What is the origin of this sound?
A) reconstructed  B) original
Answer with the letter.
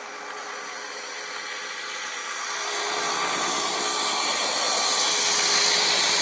B